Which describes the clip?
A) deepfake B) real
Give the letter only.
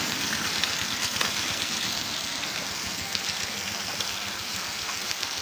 A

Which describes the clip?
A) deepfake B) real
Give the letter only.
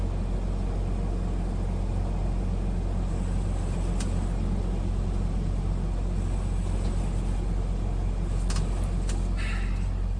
B